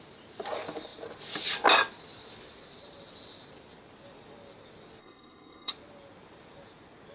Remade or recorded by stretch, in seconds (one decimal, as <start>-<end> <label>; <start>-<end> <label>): 0.0-5.0 recorded; 5.0-5.7 remade; 5.7-7.1 recorded

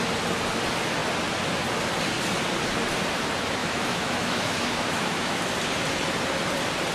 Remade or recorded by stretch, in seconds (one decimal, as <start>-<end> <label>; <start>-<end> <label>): 0.0-3.6 recorded; 3.6-5.4 remade; 5.4-6.9 recorded